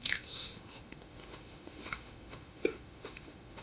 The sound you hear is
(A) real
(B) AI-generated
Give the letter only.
B